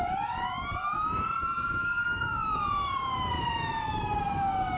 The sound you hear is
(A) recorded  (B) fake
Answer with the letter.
B